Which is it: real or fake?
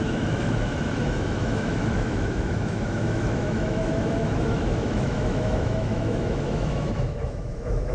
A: fake